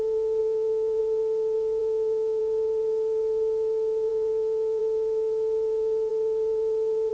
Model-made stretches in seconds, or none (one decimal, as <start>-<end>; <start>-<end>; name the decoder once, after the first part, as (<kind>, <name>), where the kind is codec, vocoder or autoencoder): 0.4-1.0 (autoencoder, DAC-VAE); 1.8-2.4; 4.1-4.8